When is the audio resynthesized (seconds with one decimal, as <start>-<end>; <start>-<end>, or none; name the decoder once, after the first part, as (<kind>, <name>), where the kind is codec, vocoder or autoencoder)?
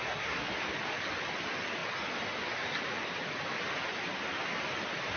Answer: 0.0-0.5 (codec, SNAC)